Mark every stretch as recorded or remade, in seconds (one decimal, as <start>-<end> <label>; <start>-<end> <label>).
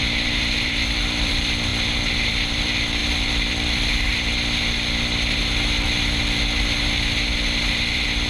0.0-1.7 remade; 1.7-2.3 recorded; 2.3-4.1 remade; 4.1-8.3 recorded